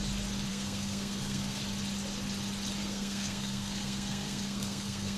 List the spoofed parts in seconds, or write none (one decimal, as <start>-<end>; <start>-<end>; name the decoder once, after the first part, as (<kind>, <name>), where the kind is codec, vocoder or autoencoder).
0.5-1.6 (codec, SNAC); 2.8-5.2